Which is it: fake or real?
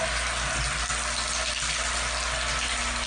real